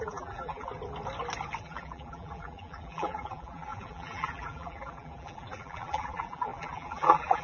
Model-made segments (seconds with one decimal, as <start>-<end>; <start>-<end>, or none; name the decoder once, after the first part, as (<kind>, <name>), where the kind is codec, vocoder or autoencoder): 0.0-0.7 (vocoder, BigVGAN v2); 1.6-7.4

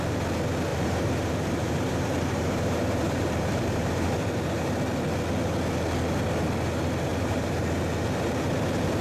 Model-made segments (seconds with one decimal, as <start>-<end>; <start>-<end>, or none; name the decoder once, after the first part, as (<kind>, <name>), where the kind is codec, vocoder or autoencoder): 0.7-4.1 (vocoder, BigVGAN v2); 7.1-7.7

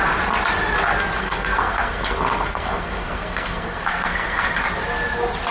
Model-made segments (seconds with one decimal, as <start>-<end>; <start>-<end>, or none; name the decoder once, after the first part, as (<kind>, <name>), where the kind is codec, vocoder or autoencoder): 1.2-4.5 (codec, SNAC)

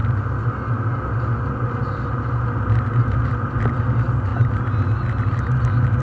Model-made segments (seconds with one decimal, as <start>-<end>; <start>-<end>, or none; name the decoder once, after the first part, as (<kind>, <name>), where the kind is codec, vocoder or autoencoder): none

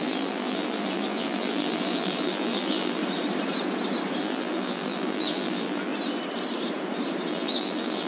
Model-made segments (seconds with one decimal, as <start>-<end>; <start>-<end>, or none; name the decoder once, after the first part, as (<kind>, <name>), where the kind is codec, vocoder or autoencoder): 0.0-3.0 (vocoder, BigVGAN v2); 4.2-5.9; 7.3-8.1

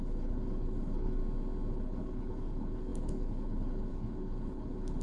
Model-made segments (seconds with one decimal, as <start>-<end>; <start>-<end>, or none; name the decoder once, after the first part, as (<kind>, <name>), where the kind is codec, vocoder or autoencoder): 0.0-1.2 (codec, HILCodec); 1.7-5.0